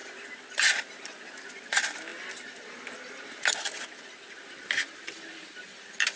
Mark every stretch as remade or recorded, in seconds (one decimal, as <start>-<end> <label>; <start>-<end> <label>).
0.0-6.2 recorded

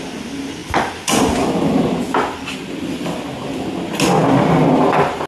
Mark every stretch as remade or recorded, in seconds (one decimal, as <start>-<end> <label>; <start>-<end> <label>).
0.0-5.3 recorded

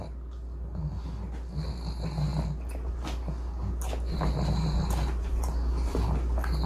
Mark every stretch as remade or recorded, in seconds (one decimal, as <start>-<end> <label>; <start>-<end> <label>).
0.0-6.7 recorded

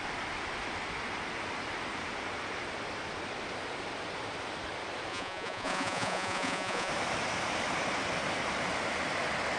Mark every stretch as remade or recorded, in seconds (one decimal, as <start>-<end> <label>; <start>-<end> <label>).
0.0-5.1 recorded; 5.1-6.9 remade; 6.9-9.6 recorded

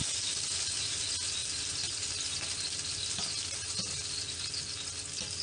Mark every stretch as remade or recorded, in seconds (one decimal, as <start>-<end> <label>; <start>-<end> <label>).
0.0-5.4 recorded

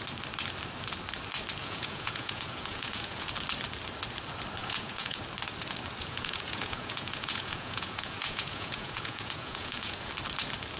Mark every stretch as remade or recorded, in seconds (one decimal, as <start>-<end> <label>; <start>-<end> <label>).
0.0-1.6 recorded; 1.6-3.3 remade; 3.3-4.6 recorded; 4.6-5.2 remade; 5.2-6.0 recorded; 6.0-10.1 remade; 10.1-10.8 recorded

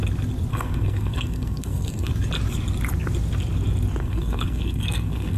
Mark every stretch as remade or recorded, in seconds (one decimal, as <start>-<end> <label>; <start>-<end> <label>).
0.0-0.5 recorded; 0.5-2.1 remade; 2.1-4.0 recorded; 4.0-5.4 remade